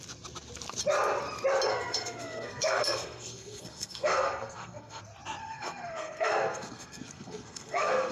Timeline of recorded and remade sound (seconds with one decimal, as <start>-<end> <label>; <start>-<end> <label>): 0.0-1.7 recorded; 1.7-5.0 remade; 5.0-5.4 recorded; 5.4-8.1 remade